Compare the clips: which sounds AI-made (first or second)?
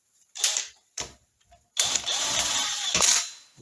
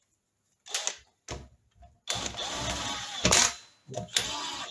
first